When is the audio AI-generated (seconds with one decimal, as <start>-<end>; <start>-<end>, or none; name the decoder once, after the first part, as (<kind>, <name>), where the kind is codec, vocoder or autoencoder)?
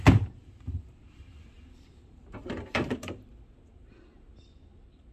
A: 1.0-3.3 (vocoder, BigVGAN v2)